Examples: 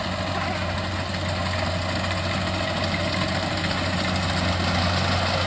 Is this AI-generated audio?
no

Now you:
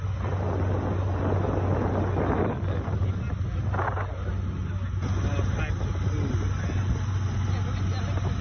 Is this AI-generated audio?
no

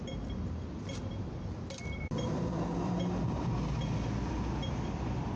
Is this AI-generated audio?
yes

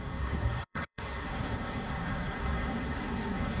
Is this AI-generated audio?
yes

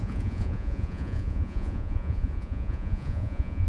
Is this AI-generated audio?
yes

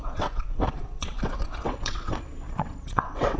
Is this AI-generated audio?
yes